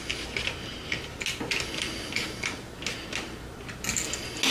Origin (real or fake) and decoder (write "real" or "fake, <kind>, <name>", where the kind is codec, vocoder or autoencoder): real